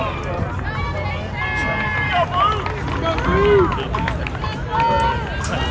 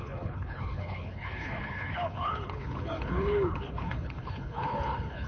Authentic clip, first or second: first